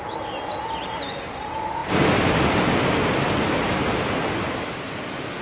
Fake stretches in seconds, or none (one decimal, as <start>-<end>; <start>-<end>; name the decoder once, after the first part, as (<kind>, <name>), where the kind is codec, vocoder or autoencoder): none